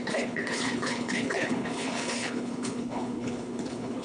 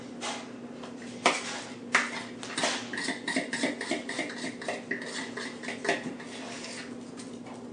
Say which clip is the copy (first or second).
first